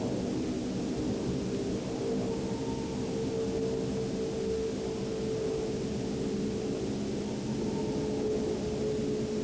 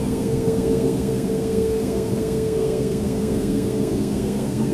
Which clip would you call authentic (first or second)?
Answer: first